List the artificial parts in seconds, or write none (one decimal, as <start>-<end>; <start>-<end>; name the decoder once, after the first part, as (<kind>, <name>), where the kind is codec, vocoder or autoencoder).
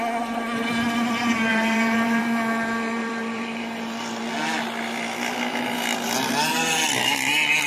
1.5-2.2 (vocoder, BigVGAN v2); 3.0-4.2